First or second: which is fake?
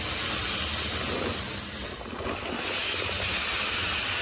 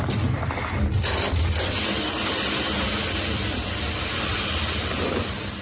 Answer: second